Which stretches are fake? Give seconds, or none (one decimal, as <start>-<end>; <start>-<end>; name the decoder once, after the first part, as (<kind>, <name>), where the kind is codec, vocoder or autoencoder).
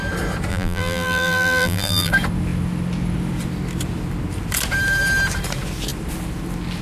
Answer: 0.5-2.1 (vocoder, BigVGAN v2)